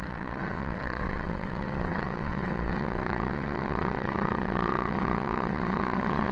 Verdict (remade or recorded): remade